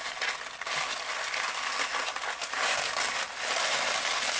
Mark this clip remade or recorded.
recorded